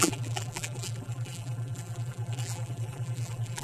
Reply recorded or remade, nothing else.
remade